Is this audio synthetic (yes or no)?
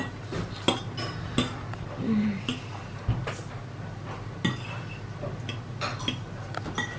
no